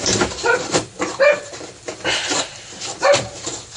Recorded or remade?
remade